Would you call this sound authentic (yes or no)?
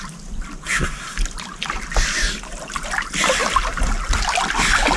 yes